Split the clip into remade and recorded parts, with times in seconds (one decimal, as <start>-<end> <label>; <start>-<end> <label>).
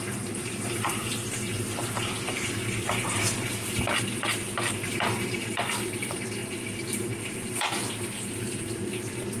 0.0-9.4 recorded